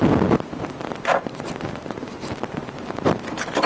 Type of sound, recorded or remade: remade